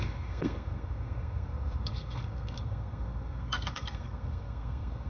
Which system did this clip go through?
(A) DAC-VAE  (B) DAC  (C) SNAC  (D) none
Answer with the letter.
C